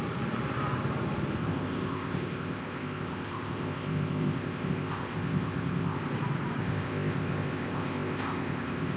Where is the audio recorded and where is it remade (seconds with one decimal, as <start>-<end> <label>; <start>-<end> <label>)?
0.0-1.4 recorded; 1.4-6.0 remade; 6.0-6.6 recorded; 6.6-9.0 remade